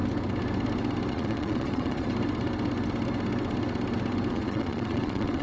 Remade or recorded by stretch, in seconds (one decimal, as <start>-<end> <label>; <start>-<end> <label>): 0.0-1.1 recorded; 1.1-2.1 remade; 2.1-4.3 recorded; 4.3-5.4 remade